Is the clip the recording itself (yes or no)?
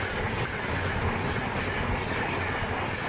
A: yes